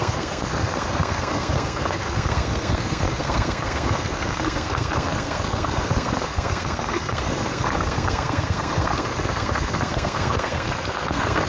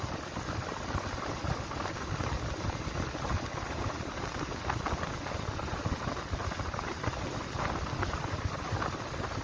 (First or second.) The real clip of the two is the second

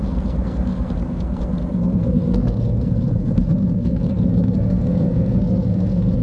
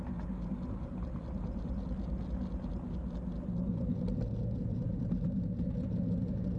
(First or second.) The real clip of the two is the second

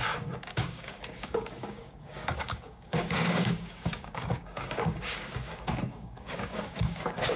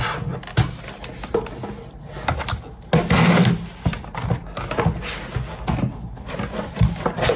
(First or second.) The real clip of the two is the second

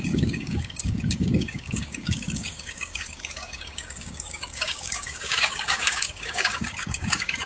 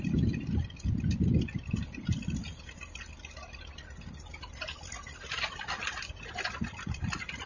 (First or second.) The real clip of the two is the second